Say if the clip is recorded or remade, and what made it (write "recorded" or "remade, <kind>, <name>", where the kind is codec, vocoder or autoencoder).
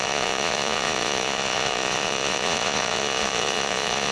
remade, vocoder, Vocos